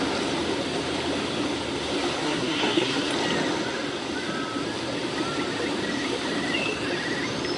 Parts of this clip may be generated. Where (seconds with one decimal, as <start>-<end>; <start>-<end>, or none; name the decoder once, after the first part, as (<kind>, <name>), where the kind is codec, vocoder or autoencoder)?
2.2-3.1 (codec, SNAC)